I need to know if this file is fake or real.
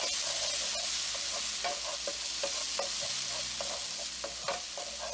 real